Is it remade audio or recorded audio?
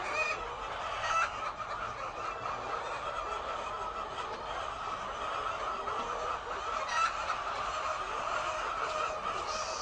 recorded